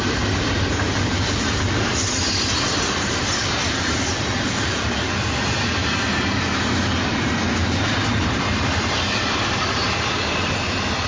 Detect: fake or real real